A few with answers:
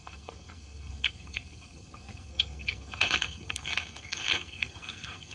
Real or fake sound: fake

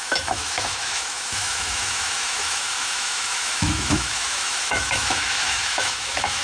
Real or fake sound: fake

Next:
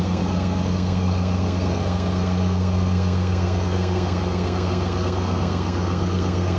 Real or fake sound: fake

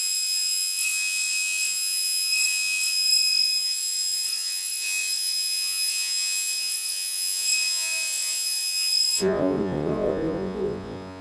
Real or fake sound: fake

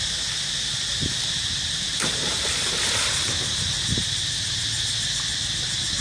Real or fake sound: real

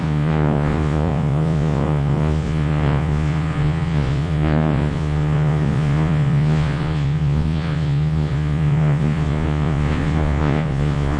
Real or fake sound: fake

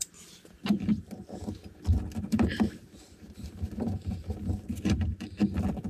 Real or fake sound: fake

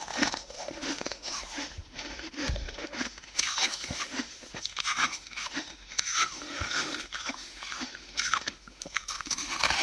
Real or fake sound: fake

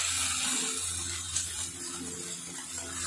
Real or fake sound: real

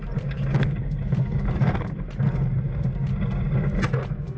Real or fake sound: real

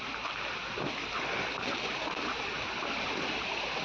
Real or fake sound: real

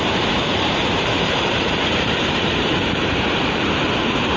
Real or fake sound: fake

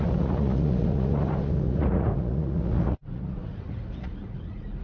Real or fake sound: fake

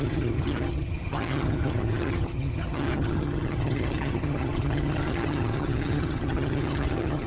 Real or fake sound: fake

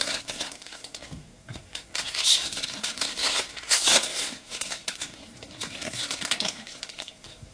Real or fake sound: fake